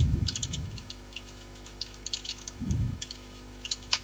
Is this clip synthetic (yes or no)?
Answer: yes